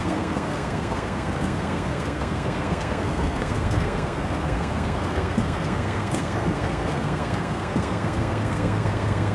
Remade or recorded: remade